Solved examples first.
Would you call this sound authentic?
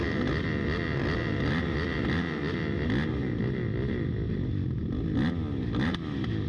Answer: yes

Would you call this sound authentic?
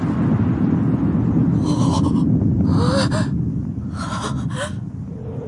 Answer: yes